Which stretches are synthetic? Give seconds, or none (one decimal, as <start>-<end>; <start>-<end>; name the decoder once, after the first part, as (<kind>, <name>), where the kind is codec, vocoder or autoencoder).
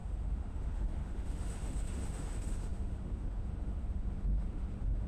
0.0-5.1 (autoencoder, DAC-VAE)